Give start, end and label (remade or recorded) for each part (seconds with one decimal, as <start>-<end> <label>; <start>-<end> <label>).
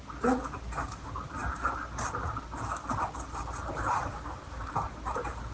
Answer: 0.0-5.5 recorded